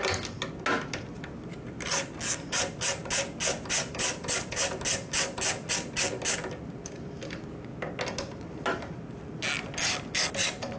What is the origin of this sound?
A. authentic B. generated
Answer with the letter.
A